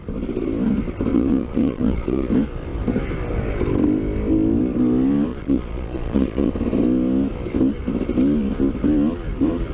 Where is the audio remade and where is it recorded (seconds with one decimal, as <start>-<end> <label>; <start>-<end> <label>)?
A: 0.0-1.1 recorded; 1.1-2.3 remade; 2.3-5.3 recorded; 5.3-6.5 remade; 6.5-9.7 recorded